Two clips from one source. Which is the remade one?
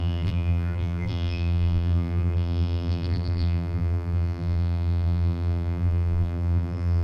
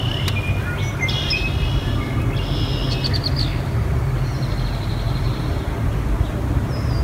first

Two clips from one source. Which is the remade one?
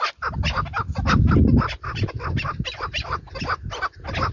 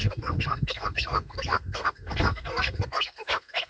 second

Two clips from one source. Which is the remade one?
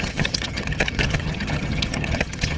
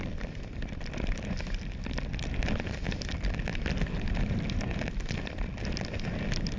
first